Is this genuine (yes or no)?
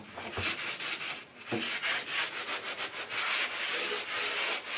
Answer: yes